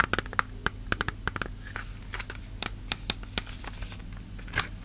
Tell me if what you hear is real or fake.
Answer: real